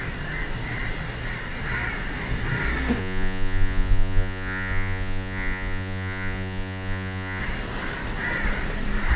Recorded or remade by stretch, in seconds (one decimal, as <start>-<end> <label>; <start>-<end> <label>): 0.0-3.0 recorded; 3.0-7.4 remade; 7.4-9.2 recorded